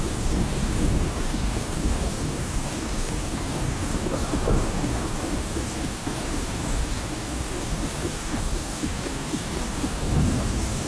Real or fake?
fake